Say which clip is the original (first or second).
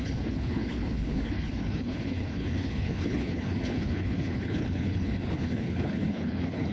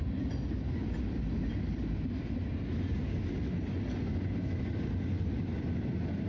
second